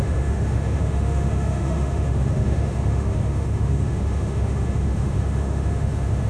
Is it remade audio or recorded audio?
remade